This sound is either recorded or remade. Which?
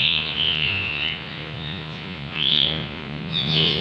remade